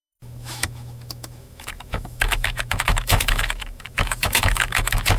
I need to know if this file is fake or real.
fake